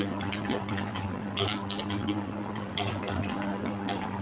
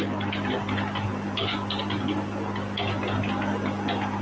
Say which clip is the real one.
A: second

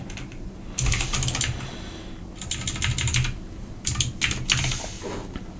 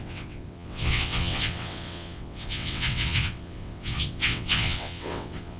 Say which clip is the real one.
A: first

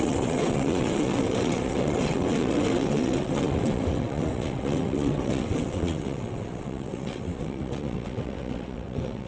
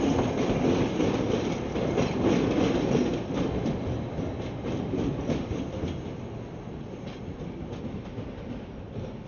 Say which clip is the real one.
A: second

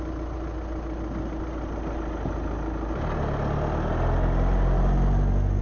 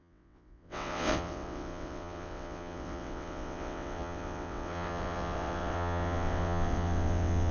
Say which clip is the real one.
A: first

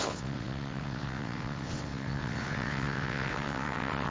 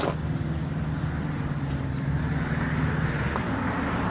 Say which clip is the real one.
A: second